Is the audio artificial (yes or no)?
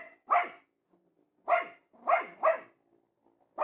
no